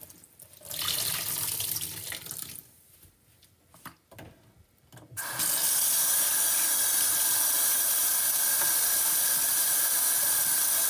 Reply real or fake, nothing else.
real